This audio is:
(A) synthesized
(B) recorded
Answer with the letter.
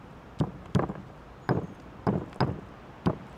B